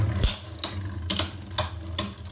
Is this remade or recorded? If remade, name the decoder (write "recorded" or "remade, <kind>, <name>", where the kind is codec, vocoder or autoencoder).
recorded